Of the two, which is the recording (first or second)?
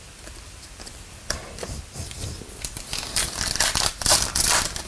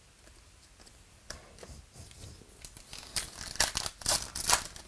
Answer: second